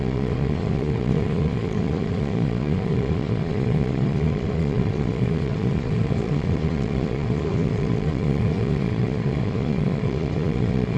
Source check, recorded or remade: remade